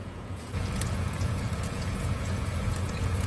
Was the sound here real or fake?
fake